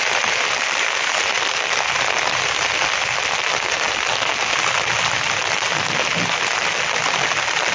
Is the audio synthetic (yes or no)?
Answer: no